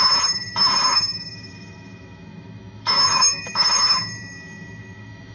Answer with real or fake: fake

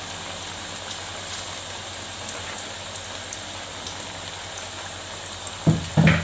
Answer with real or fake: real